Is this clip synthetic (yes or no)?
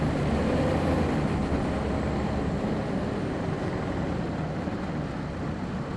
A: no